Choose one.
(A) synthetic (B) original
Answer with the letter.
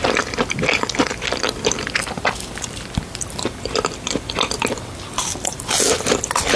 A